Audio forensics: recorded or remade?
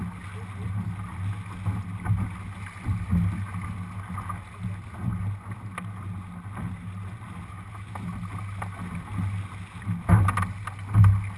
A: recorded